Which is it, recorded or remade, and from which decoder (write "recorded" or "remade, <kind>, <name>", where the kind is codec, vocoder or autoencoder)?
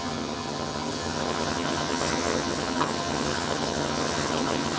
remade, vocoder, HiFi-GAN